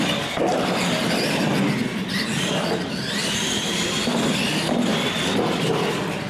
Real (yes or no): yes